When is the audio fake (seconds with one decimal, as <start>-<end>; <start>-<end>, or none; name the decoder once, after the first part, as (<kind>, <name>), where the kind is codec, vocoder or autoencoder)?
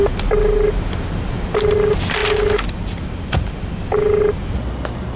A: none